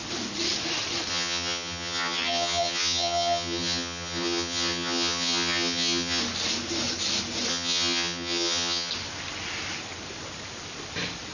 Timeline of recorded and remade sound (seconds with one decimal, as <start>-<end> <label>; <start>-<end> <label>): 0.0-1.1 recorded; 1.1-6.2 remade; 6.2-7.5 recorded; 7.5-8.9 remade; 8.9-11.3 recorded